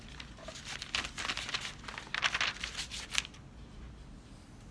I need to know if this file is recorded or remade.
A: recorded